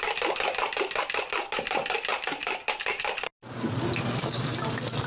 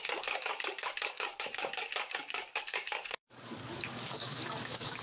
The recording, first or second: first